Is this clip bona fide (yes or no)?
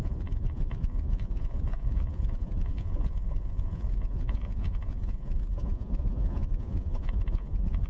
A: no